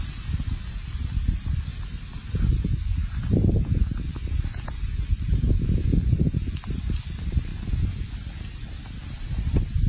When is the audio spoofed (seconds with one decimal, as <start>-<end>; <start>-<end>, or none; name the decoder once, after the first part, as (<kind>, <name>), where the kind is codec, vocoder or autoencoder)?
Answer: none